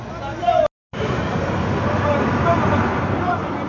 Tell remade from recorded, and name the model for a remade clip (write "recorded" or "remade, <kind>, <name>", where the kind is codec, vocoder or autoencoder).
recorded